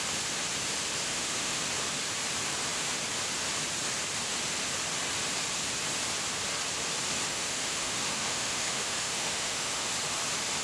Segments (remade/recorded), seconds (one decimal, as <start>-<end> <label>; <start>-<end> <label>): 0.0-1.1 recorded; 1.1-1.6 remade; 1.6-7.3 recorded; 7.3-9.9 remade; 9.9-10.6 recorded